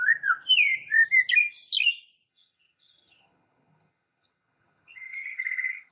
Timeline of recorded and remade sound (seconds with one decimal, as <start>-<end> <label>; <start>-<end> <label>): 0.0-2.3 recorded; 2.3-5.9 remade